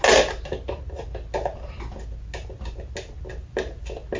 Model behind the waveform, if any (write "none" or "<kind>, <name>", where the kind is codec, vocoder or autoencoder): none